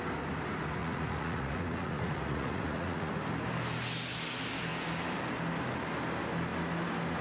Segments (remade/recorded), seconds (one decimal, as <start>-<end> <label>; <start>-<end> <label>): 0.0-0.8 recorded; 0.8-3.1 remade; 3.1-7.2 recorded